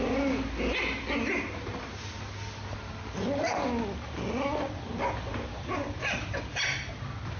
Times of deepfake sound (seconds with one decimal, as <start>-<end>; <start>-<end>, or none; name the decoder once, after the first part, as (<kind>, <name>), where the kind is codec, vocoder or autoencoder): 6.0-6.9 (vocoder, BigVGAN v2)